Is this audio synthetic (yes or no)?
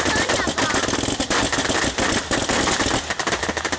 no